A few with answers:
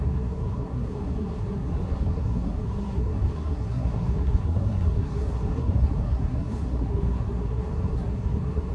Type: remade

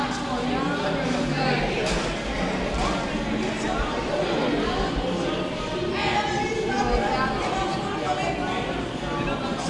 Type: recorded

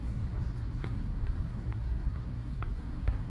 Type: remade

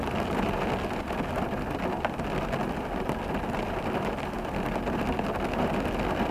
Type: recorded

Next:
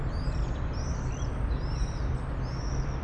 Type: recorded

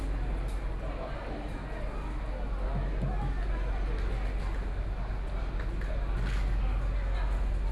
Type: recorded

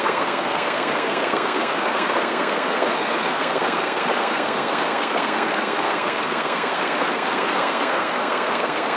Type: remade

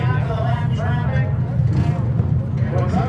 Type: recorded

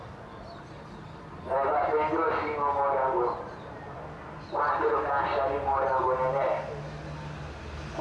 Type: recorded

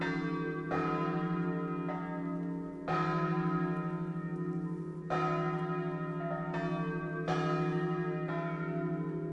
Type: recorded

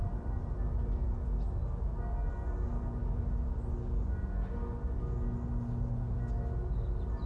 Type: recorded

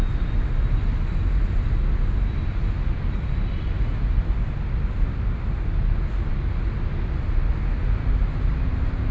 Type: recorded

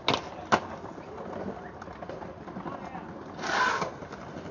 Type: recorded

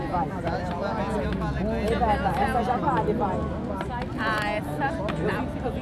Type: recorded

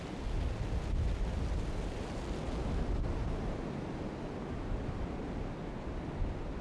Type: recorded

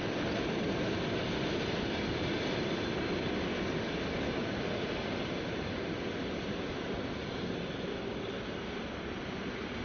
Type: recorded